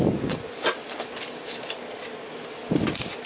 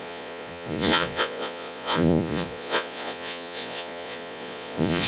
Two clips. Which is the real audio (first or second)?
first